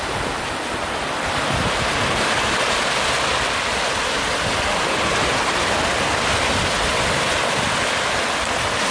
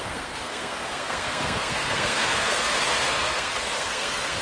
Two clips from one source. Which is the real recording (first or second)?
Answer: first